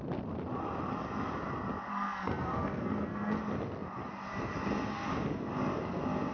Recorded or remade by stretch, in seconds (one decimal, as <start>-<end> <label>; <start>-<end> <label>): 0.0-1.9 recorded; 1.9-3.4 remade; 3.4-6.3 recorded